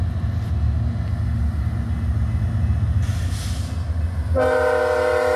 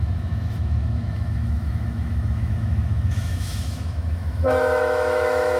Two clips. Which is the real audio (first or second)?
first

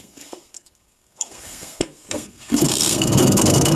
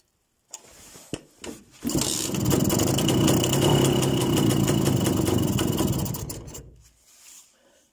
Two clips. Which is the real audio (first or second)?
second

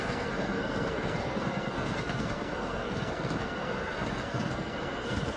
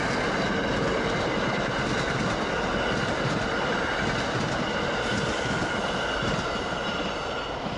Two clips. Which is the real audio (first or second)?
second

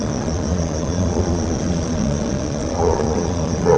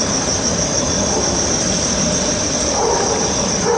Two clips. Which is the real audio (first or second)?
second